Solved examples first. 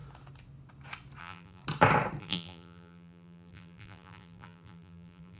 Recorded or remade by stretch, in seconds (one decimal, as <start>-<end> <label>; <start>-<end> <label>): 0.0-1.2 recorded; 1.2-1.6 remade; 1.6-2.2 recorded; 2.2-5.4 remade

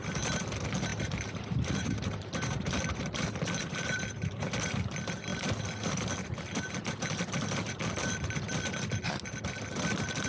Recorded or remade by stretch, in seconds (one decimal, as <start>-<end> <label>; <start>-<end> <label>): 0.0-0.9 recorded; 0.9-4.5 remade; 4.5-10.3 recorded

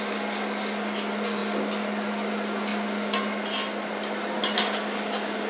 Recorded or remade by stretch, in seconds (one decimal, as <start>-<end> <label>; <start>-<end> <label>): 0.0-5.5 recorded